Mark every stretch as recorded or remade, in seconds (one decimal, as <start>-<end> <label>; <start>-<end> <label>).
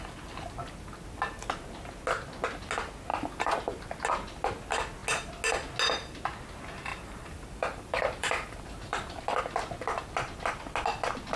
0.0-3.1 recorded; 3.1-4.0 remade; 4.0-6.9 recorded; 6.9-9.4 remade; 9.4-11.4 recorded